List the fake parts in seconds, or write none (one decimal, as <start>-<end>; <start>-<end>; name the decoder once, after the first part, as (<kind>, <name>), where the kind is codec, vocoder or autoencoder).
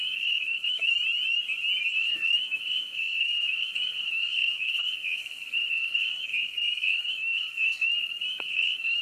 0.0-0.9 (codec, SNAC); 1.9-9.0